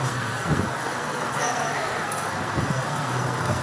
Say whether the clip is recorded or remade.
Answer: remade